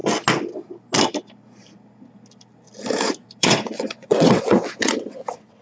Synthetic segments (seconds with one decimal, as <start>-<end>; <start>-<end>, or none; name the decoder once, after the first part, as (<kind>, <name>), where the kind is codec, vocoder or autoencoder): 3.4-5.6 (vocoder, WaveNeXt)